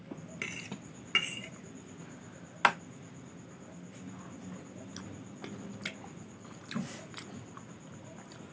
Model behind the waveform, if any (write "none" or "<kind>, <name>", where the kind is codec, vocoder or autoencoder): none